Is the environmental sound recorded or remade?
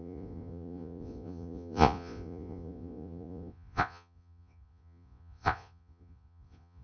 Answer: remade